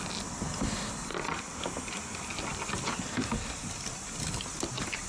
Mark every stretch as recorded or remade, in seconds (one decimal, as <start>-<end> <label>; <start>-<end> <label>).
0.0-5.1 recorded